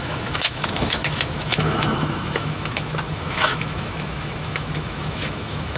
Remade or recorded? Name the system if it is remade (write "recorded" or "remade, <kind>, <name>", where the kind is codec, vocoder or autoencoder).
remade, autoencoder, DAC-VAE